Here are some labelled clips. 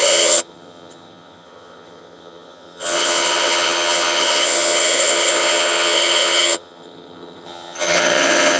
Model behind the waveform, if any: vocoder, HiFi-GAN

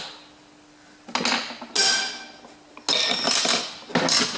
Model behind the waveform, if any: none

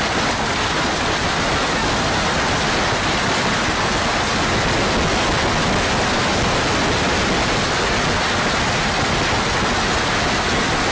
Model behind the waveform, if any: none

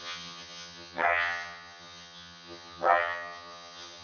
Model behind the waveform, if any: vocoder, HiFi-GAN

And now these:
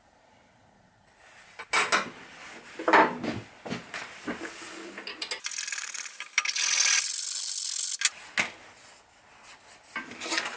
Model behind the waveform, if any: none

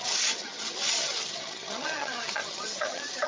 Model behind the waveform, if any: vocoder, HiFi-GAN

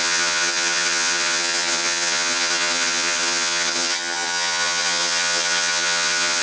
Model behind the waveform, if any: vocoder, HiFi-GAN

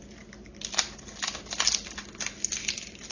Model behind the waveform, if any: none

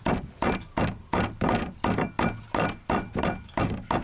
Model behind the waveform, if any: none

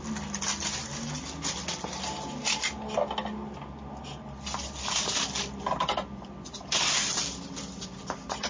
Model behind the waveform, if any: none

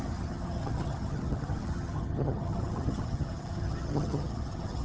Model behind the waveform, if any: vocoder, HiFi-GAN